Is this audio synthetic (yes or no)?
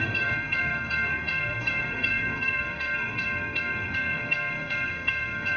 yes